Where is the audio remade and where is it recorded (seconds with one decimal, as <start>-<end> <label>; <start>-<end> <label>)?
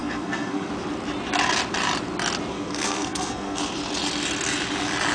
0.0-0.7 remade; 0.7-2.5 recorded; 2.5-3.6 remade; 3.6-5.1 recorded